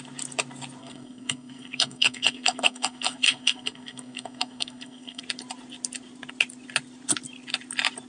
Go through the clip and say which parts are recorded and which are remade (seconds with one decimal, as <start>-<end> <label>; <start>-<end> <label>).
0.0-0.8 recorded; 0.8-5.2 remade; 5.2-8.1 recorded